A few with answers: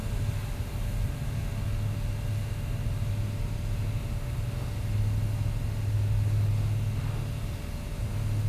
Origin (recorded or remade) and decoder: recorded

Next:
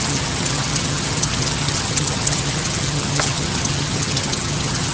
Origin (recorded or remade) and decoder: remade, vocoder, HiFi-GAN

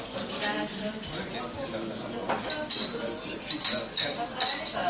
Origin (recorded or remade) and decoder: recorded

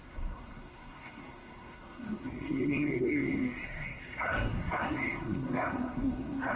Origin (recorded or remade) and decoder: remade, codec, SNAC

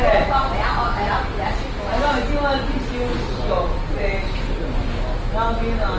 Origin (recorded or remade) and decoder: recorded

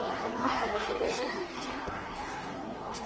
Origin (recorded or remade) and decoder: remade, codec, SNAC